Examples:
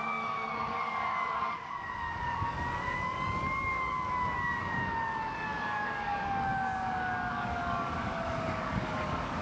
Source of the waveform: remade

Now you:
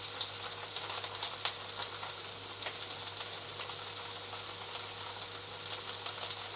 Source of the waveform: recorded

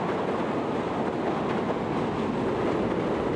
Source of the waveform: recorded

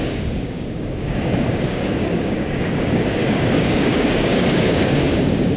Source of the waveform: remade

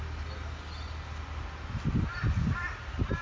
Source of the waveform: recorded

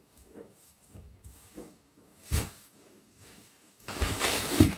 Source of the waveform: remade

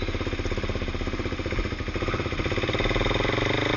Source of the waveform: recorded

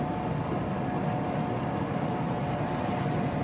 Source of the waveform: recorded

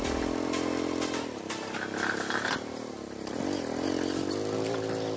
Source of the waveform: recorded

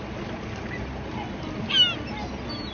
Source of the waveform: recorded